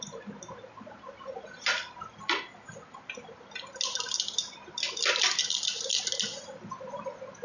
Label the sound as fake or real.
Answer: real